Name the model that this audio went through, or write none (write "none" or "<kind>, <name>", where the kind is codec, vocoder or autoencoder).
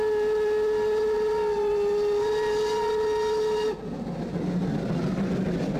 none